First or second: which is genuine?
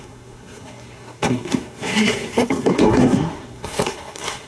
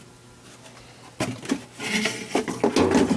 second